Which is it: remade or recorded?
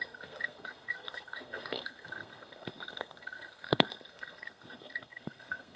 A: remade